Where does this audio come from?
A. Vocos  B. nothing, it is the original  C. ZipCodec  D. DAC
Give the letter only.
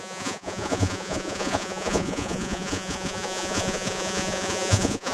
A